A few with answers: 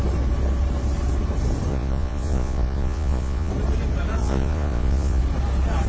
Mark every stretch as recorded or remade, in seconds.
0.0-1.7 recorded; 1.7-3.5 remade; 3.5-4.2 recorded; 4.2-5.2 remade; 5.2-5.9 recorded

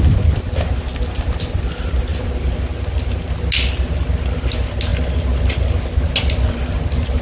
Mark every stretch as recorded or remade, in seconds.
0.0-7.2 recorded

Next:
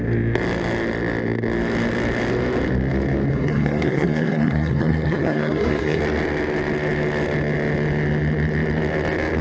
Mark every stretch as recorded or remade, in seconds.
0.0-3.3 recorded; 3.3-6.0 remade; 6.0-9.4 recorded

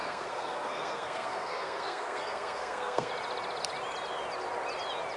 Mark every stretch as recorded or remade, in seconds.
0.0-3.1 remade; 3.1-5.2 recorded

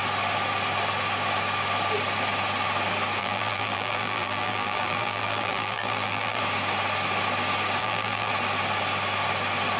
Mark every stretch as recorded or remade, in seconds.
0.0-3.2 recorded; 3.2-6.4 remade; 6.4-7.8 recorded; 7.8-8.3 remade; 8.3-9.8 recorded

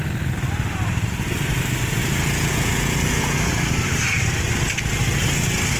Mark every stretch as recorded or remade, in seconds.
0.0-2.0 recorded; 2.0-3.5 remade; 3.5-5.8 recorded

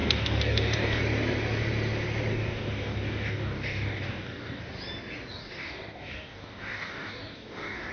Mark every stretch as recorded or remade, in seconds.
0.0-1.0 remade; 1.0-2.3 recorded; 2.3-4.6 remade; 4.6-5.3 recorded; 5.3-7.9 remade

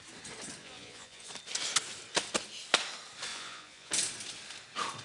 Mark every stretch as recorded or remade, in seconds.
0.0-0.6 recorded; 0.6-1.3 remade; 1.3-3.3 recorded; 3.3-3.9 remade; 3.9-5.0 recorded